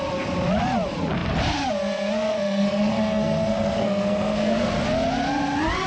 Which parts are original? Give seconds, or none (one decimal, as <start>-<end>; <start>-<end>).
0.0-2.3; 4.7-5.9